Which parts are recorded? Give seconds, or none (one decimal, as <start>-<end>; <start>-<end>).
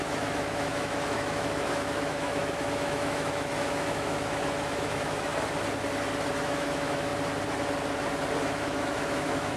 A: 5.3-6.4; 7.1-8.4